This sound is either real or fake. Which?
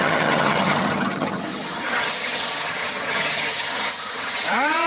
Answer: fake